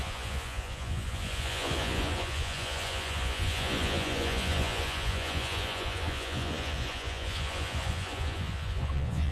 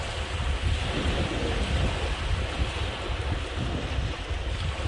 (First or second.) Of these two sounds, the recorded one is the second